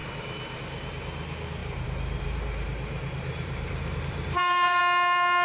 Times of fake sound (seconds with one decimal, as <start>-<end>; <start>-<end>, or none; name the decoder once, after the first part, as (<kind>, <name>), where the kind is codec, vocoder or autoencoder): 1.6-4.8 (vocoder, BigVGAN v2)